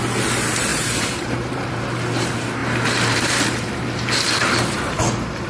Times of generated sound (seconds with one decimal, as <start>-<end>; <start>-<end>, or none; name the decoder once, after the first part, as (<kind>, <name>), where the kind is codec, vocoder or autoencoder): 0.7-1.7 (vocoder, BigVGAN v2); 2.6-5.0